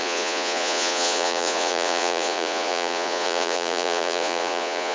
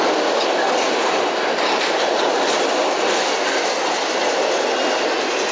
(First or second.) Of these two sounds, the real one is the second